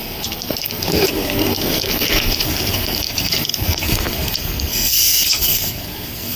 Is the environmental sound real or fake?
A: fake